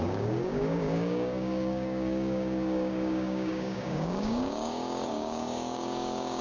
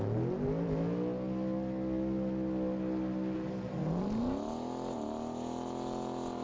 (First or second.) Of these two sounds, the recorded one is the second